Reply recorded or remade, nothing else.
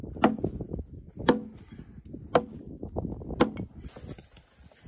recorded